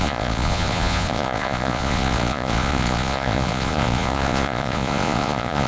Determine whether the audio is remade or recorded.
remade